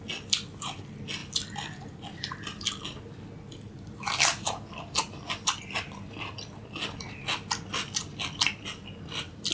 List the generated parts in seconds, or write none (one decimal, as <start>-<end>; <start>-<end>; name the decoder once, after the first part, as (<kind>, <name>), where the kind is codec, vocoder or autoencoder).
none